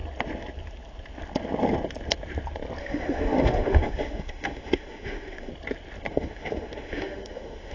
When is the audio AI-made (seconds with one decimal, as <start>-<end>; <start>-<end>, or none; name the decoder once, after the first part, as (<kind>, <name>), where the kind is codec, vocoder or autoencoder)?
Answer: 2.8-5.5 (autoencoder, DAC-VAE); 6.1-7.7